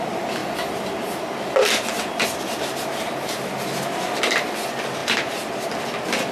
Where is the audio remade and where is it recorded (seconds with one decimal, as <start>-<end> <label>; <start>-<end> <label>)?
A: 0.0-5.0 recorded; 5.0-5.7 remade; 5.7-6.3 recorded